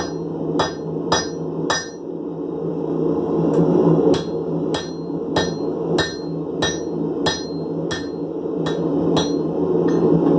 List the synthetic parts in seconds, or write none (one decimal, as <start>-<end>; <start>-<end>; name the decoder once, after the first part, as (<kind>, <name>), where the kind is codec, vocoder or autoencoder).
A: none